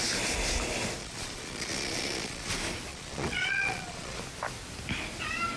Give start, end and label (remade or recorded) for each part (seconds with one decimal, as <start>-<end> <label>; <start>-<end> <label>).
0.0-1.0 recorded; 1.0-2.5 remade; 2.5-2.9 recorded; 2.9-4.2 remade; 4.2-5.6 recorded